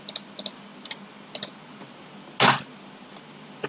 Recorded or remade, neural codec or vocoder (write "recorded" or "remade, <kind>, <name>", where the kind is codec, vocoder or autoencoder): recorded